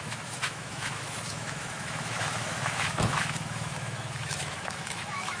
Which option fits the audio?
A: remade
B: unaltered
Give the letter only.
A